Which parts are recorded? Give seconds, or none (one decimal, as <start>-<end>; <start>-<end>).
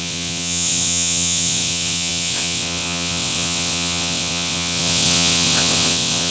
none